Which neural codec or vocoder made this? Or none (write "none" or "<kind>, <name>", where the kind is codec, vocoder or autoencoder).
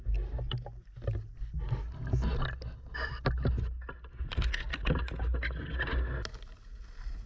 none